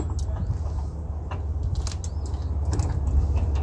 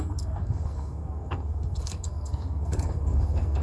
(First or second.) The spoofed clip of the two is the second